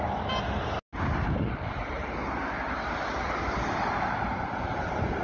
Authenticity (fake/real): real